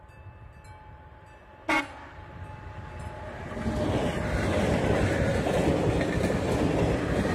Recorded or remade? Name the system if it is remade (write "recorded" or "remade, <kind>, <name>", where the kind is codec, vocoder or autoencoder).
recorded